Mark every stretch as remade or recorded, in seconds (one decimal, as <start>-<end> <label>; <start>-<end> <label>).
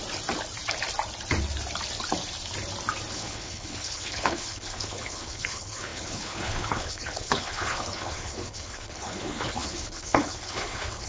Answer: 0.0-3.1 recorded; 3.1-11.1 remade